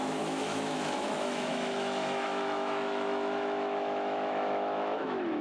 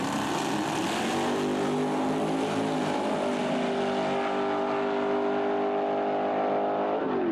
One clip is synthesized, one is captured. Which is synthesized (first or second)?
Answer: first